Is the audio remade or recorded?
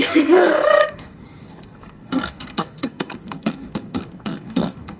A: remade